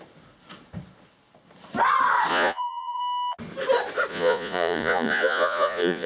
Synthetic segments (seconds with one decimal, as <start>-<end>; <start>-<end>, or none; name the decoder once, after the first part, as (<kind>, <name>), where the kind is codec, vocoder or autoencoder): 2.3-3.0 (vocoder, Vocos); 4.1-6.1